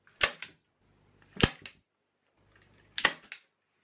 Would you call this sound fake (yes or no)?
no